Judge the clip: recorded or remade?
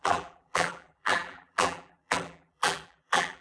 remade